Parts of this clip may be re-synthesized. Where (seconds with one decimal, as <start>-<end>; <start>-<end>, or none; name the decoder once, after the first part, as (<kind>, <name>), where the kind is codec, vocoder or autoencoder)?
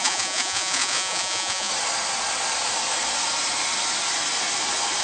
0.0-1.7 (vocoder, Vocos)